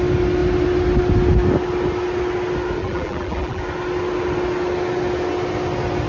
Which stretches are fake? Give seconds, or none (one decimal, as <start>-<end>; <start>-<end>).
2.8-3.6